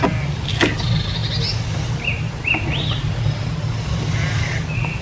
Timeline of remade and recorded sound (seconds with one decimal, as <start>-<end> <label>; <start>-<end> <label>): 0.0-1.2 remade; 1.2-4.1 recorded; 4.1-5.0 remade